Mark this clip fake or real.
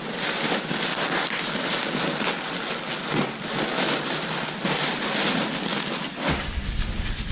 real